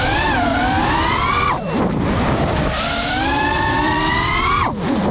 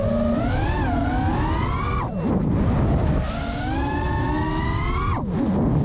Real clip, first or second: second